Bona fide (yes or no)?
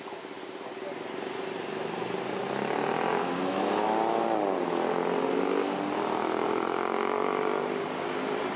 yes